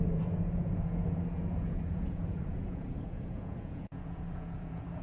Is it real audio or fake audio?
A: fake